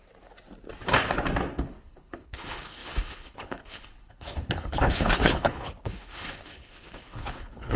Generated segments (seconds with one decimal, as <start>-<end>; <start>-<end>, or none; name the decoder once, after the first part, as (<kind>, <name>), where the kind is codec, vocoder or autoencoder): 1.6-7.8 (codec, HILCodec)